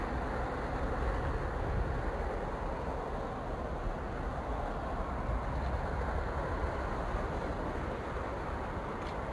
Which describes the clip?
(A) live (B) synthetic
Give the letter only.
A